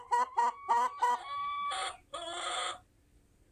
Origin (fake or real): real